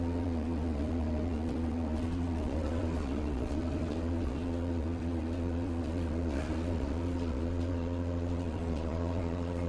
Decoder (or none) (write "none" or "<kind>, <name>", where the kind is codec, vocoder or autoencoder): vocoder, Vocos